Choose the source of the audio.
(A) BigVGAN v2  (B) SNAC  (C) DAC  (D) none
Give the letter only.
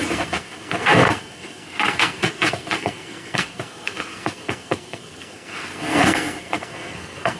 B